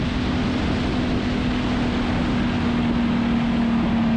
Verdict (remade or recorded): recorded